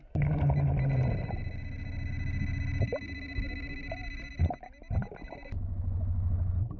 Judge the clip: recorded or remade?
recorded